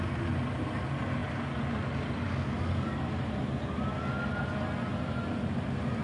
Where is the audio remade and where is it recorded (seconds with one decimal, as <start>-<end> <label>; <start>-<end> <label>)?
0.0-6.0 recorded